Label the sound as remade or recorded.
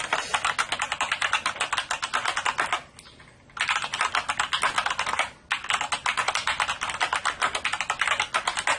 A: recorded